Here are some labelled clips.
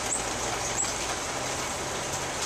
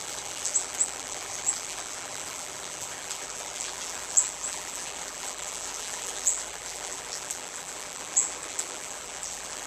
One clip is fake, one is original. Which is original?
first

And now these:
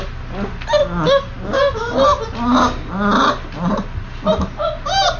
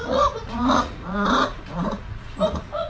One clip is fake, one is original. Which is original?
first